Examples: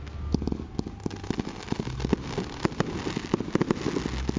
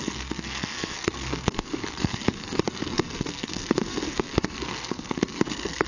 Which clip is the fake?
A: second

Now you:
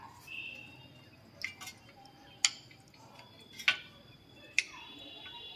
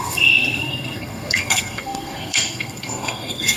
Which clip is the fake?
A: second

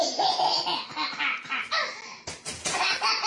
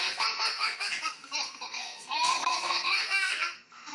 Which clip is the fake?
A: second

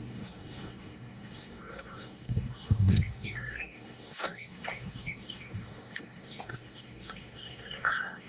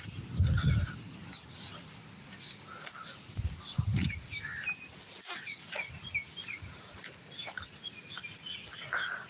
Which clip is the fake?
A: first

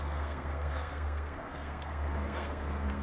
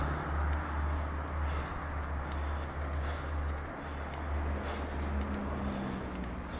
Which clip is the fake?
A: first